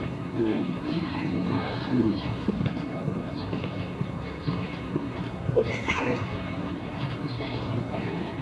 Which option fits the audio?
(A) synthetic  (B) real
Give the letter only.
A